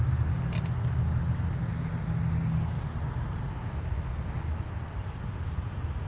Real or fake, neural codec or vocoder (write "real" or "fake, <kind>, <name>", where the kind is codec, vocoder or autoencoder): real